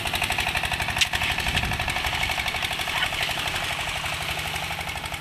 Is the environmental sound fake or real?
real